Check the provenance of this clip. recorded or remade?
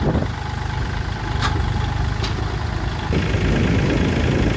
recorded